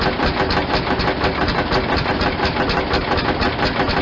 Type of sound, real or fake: real